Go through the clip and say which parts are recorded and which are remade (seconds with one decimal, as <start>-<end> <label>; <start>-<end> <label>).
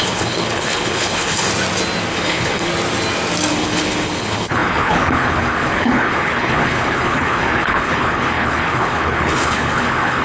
0.0-1.5 remade; 1.5-2.1 recorded; 2.1-2.7 remade; 2.7-3.5 recorded; 3.5-10.2 remade